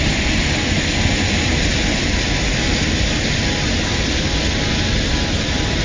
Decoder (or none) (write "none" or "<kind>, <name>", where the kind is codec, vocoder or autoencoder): none